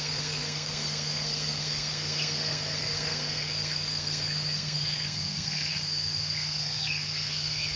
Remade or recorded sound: remade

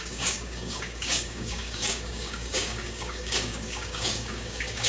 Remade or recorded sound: remade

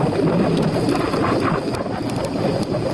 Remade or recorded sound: recorded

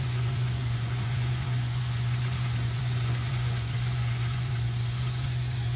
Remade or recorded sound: remade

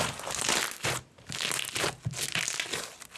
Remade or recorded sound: recorded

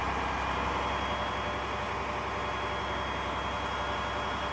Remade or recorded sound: recorded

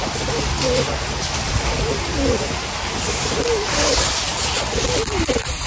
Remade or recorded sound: recorded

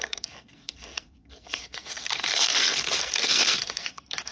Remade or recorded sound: remade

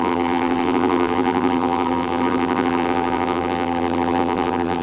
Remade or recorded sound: remade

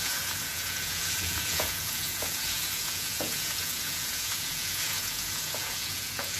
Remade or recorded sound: remade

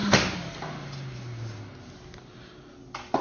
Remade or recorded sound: recorded